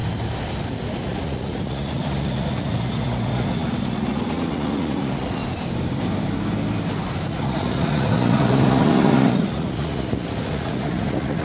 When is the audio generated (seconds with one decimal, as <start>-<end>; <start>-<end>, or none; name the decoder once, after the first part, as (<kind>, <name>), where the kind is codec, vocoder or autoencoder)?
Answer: 1.0-5.4 (vocoder, Vocos); 7.3-11.4

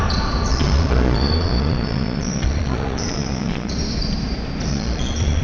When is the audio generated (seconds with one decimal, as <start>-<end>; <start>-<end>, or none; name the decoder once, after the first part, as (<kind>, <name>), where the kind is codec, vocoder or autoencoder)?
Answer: 0.5-3.7 (vocoder, Vocos); 4.7-5.4

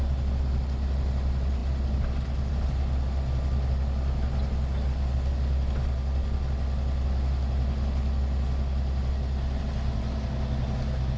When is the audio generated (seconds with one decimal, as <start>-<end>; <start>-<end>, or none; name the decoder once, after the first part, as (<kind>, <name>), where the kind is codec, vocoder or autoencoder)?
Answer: none

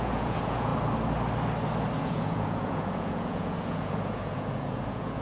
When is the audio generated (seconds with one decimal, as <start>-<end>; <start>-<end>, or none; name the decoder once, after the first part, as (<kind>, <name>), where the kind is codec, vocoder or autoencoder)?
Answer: 0.0-0.7 (vocoder, Vocos); 2.0-5.2

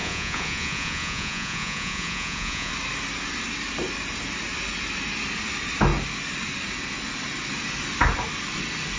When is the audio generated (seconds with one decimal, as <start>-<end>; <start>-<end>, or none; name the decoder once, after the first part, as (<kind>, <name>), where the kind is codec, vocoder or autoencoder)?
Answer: 0.0-2.7 (vocoder, Vocos)

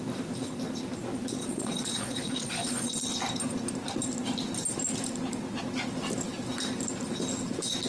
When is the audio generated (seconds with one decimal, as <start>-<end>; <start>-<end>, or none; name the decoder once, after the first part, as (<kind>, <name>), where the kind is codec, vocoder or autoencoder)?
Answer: 1.4-3.0 (vocoder, Vocos)

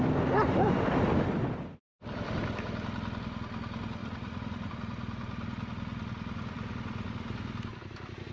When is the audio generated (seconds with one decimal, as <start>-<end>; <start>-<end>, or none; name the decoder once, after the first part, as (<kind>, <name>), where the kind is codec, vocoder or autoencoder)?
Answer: 4.0-4.7 (vocoder, Vocos)